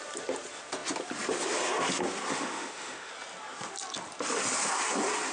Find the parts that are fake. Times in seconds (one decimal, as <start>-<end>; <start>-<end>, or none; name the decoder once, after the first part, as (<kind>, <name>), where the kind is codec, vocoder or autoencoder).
2.3-3.1 (autoencoder, DAC-VAE)